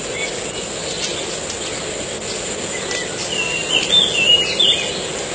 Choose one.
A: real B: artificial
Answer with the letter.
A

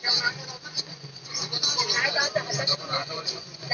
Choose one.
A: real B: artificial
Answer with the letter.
B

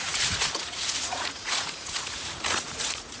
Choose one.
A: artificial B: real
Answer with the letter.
A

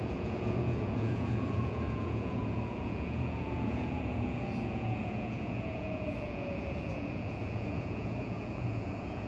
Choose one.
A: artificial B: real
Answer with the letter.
A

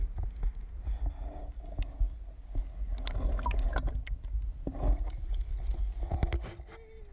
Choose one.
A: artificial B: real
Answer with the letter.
B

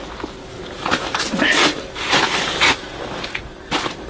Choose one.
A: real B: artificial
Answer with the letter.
A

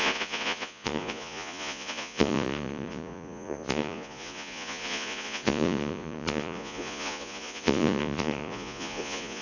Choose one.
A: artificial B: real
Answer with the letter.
A